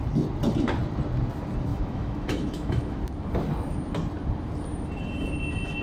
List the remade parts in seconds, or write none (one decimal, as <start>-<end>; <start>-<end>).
1.7-3.0

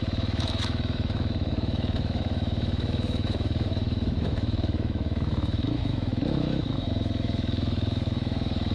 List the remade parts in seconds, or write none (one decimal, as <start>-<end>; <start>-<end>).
0.0-8.7

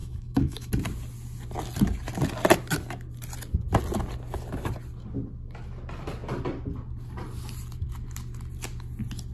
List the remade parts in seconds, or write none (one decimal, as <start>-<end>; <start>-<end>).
0.0-0.7

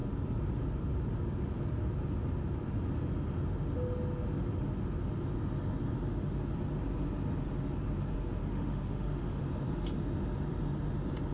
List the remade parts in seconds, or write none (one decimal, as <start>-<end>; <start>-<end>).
8.4-9.4